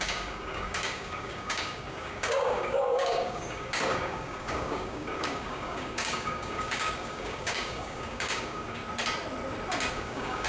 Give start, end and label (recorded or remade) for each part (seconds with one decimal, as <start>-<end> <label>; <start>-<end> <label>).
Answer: 0.0-8.8 remade; 8.8-9.9 recorded; 9.9-10.5 remade